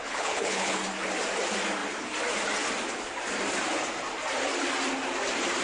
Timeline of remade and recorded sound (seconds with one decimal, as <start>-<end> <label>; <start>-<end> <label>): 0.0-0.8 remade; 0.8-5.6 recorded